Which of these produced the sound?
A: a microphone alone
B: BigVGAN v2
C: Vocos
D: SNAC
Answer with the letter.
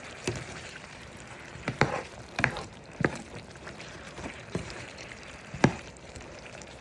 B